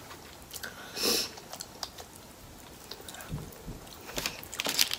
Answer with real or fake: real